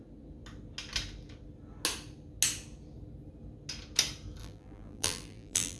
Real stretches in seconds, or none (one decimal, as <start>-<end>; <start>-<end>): 0.0-4.4